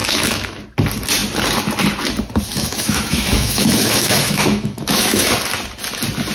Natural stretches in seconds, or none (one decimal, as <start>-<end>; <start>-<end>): 0.6-2.5; 5.3-6.3